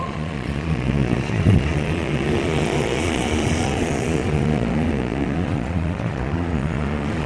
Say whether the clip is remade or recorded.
remade